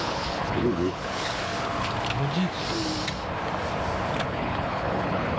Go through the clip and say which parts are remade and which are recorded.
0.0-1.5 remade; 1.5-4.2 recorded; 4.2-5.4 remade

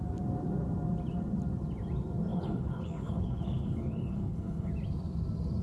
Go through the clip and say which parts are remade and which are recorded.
0.0-2.3 recorded; 2.3-4.7 remade; 4.7-5.6 recorded

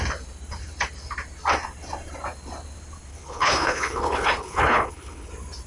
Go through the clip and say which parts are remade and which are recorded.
0.0-3.1 recorded; 3.1-5.3 remade; 5.3-5.7 recorded

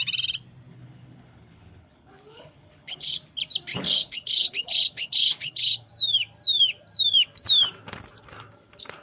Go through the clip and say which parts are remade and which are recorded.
0.0-0.7 recorded; 0.7-3.1 remade; 3.1-3.7 recorded; 3.7-5.9 remade; 5.9-9.0 recorded

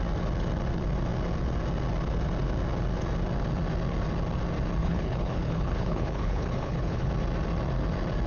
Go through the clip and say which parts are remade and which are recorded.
0.0-4.8 recorded; 4.8-7.1 remade; 7.1-8.3 recorded

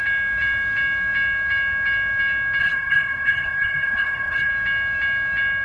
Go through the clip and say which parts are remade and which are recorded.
0.0-2.6 recorded; 2.6-4.5 remade; 4.5-5.6 recorded

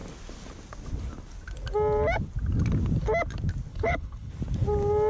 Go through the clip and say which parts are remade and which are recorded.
0.0-3.7 recorded; 3.7-4.3 remade; 4.3-5.1 recorded

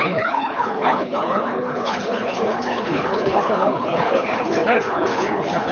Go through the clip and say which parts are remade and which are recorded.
0.0-5.7 remade